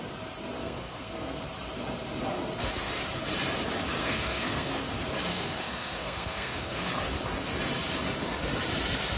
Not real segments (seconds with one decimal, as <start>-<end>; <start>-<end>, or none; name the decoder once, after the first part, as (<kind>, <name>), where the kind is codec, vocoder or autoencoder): 0.6-1.4 (codec, SNAC); 4.0-4.8; 5.3-6.9